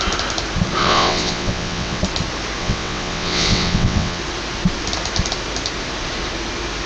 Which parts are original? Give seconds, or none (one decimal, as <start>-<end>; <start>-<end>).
0.0-0.8; 2.0-2.6; 4.2-6.9